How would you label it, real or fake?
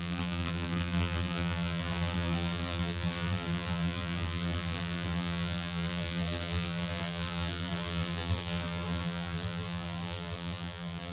fake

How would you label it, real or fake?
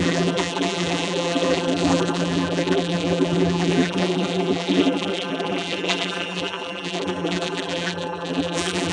fake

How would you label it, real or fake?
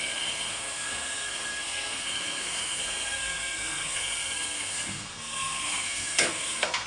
fake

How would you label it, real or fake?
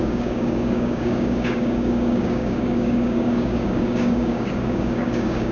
fake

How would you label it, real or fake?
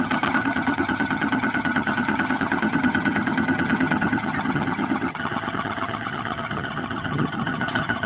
fake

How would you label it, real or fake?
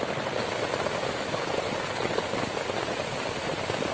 real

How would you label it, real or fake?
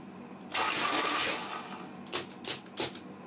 real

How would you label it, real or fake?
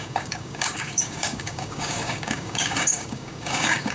fake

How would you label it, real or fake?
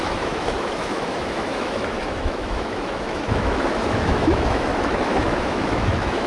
fake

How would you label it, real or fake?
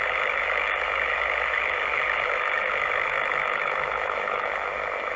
fake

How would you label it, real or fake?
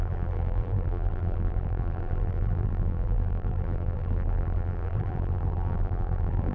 fake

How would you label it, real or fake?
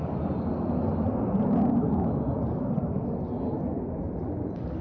real